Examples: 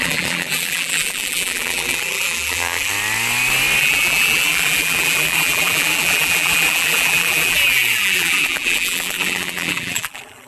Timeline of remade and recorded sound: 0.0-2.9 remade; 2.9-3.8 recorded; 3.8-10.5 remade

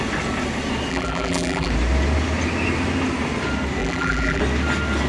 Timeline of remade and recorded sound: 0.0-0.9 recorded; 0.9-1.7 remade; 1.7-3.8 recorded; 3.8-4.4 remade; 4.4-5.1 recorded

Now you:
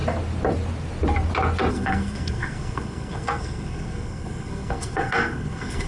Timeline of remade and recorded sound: 0.0-1.7 recorded; 1.7-5.9 remade

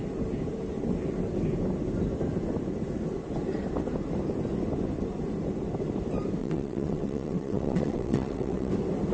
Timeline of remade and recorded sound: 0.0-6.4 recorded; 6.4-8.7 remade; 8.7-9.1 recorded

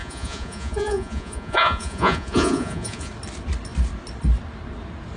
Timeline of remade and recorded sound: 0.0-3.1 remade; 3.1-5.2 recorded

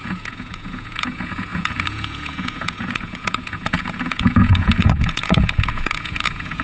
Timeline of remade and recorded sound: 0.0-6.6 remade

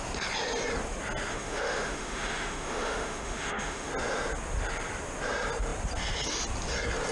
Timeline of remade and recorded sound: 0.0-1.3 recorded; 1.3-3.9 remade; 3.9-7.1 recorded